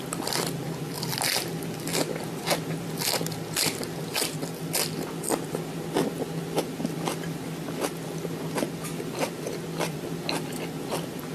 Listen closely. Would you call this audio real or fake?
real